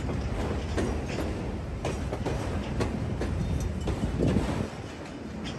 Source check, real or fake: real